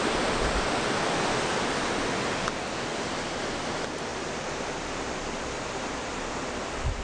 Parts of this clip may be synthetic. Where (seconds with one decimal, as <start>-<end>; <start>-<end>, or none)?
none